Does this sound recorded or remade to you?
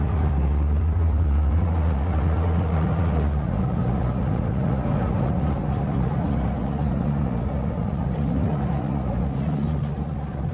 remade